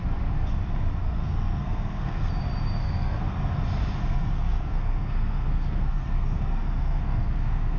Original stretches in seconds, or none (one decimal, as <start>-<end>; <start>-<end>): 0.0-1.0; 2.3-2.8; 3.6-4.0